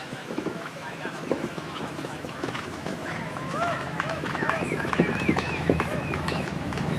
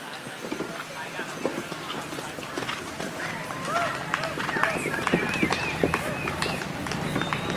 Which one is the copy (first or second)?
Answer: first